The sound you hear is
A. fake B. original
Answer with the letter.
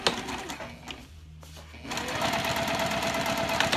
B